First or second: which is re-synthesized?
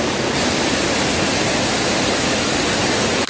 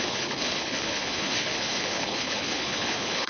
second